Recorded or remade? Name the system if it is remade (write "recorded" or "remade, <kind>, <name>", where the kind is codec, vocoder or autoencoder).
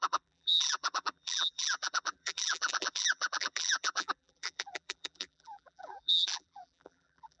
remade, vocoder, BigVGAN v2